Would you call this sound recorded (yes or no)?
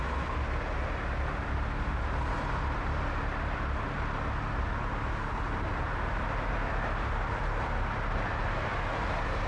yes